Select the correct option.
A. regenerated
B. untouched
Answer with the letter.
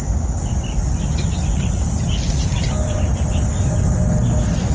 B